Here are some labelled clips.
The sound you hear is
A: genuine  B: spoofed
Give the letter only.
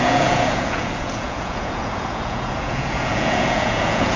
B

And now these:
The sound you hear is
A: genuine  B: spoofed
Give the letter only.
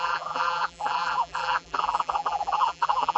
B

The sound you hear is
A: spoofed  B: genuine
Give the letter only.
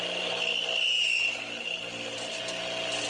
B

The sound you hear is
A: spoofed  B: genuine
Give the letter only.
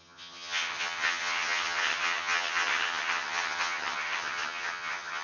A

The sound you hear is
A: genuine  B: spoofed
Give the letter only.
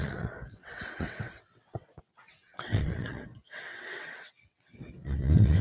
B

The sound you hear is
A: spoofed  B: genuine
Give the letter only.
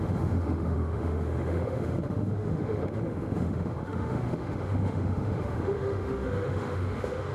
A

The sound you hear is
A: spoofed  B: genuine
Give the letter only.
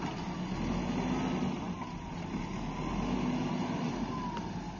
B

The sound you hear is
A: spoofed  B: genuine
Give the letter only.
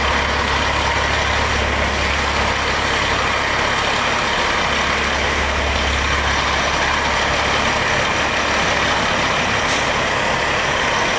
B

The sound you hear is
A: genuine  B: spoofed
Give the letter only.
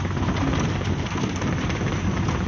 A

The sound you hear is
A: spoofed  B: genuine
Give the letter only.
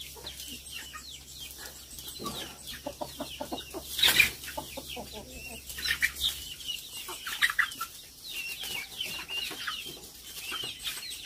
B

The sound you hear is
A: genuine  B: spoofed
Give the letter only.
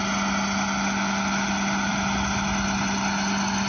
A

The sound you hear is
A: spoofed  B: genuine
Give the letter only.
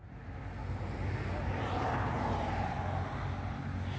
B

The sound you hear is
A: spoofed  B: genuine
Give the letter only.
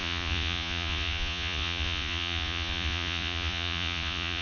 A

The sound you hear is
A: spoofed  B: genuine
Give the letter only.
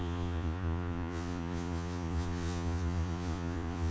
A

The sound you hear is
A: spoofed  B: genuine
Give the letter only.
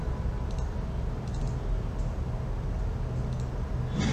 B